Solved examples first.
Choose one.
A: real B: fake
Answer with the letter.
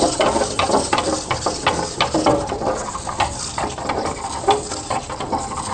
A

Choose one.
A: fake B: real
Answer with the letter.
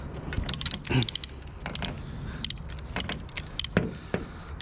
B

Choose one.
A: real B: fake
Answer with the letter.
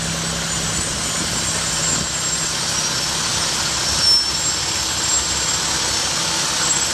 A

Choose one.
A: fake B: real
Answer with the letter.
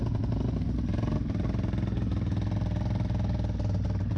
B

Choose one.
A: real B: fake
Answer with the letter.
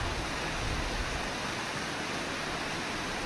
A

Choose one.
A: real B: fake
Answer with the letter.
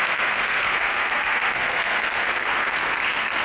B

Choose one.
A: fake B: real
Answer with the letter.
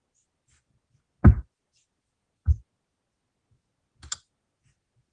B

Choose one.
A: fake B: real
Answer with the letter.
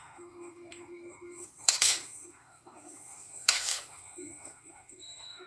A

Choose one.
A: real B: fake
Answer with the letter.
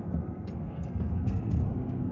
B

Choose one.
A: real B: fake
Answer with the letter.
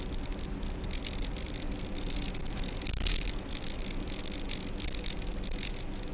A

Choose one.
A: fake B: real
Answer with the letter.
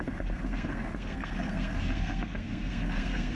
A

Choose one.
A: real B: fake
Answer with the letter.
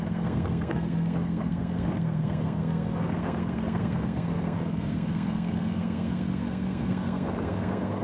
B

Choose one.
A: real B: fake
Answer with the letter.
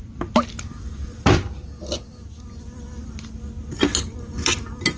A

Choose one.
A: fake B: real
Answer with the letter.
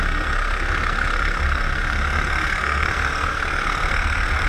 A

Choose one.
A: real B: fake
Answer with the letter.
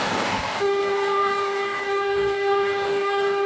B